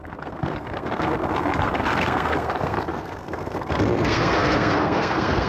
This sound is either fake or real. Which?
fake